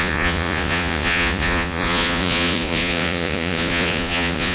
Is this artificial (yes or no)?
yes